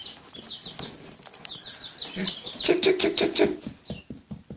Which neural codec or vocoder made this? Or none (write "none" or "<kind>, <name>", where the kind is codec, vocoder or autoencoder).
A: none